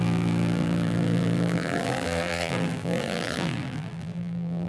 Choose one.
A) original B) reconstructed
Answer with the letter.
B